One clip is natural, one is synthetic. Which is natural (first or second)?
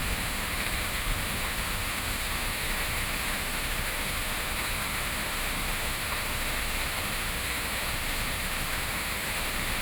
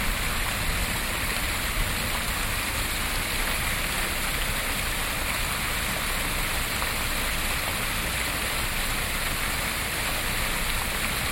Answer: second